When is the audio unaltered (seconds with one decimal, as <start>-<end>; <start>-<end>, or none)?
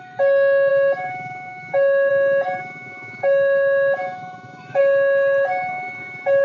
0.0-0.7; 2.1-2.6; 4.8-6.4